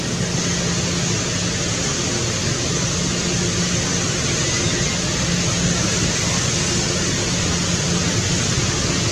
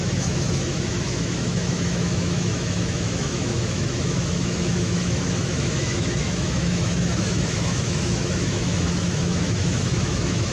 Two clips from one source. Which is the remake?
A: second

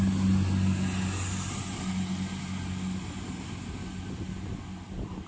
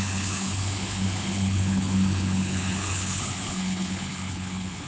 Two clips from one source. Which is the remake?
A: second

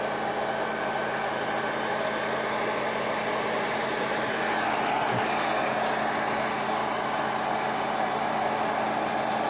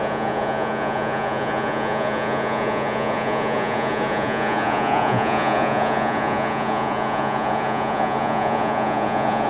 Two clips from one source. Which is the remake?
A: second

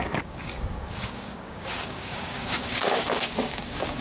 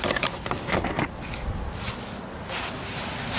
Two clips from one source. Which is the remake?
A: first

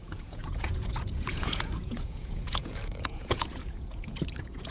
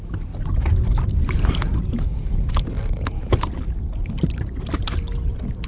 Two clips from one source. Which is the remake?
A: first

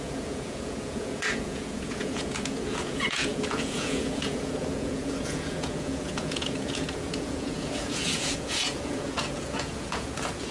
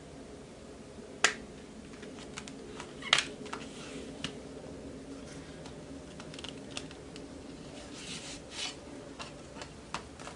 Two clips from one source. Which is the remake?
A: first